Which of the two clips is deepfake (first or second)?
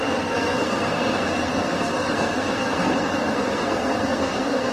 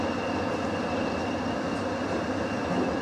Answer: first